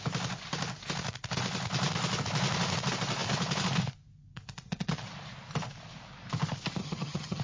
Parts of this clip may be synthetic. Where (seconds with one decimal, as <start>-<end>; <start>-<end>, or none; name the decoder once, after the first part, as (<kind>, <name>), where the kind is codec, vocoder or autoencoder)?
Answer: 6.8-7.4 (vocoder, HiFi-GAN)

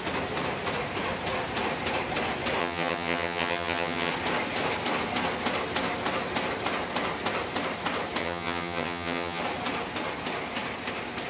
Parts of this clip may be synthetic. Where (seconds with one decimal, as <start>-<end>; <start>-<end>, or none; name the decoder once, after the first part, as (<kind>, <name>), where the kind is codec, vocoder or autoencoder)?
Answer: 2.6-4.1 (vocoder, HiFi-GAN); 8.2-9.4